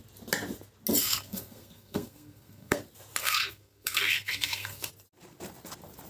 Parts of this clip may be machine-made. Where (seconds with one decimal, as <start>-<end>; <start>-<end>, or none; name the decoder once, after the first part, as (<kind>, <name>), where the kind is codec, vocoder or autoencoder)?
1.0-2.8 (codec, SNAC); 3.2-4.9